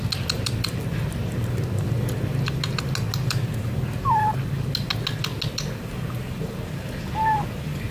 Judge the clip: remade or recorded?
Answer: recorded